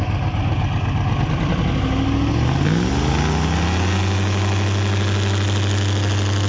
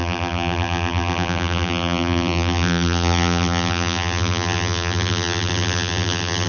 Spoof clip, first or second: second